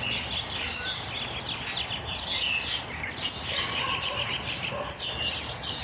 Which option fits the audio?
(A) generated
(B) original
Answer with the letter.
B